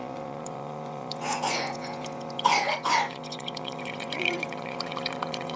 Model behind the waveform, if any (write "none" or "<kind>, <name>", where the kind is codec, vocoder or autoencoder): vocoder, Vocos